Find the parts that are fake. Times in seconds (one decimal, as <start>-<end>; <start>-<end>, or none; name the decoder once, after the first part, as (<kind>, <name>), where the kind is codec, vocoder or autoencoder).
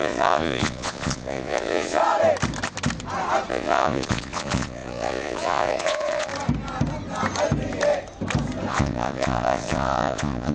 0.0-2.0 (vocoder, Vocos); 3.5-6.3; 8.7-10.5